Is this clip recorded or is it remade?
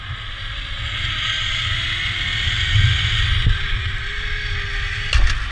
recorded